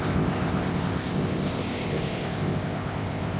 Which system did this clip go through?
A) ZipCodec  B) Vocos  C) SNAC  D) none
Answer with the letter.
A